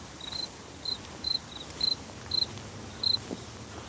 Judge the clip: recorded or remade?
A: recorded